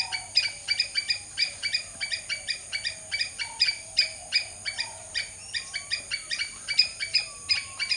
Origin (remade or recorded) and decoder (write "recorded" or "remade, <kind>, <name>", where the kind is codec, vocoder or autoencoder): recorded